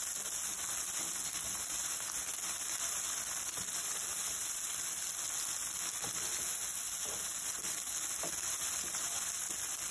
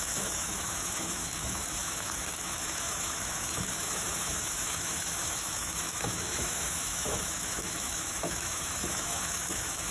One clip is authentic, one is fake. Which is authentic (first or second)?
first